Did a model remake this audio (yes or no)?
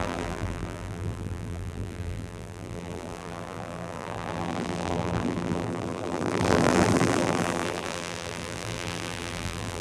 yes